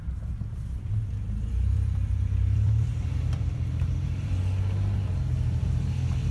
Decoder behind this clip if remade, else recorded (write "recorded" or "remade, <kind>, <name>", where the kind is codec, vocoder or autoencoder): remade, vocoder, BigVGAN v2